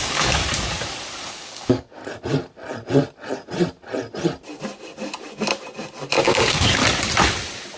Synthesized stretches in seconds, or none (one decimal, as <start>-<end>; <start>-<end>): 0.0-0.4; 1.3-2.0; 6.2-6.8